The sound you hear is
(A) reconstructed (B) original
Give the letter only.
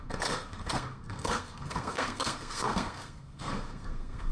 A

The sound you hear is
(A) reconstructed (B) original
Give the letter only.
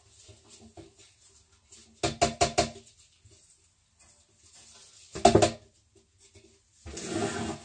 B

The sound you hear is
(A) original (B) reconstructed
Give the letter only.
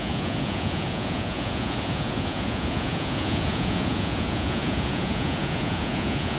B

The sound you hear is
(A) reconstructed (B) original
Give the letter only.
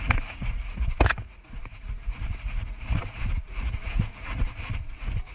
A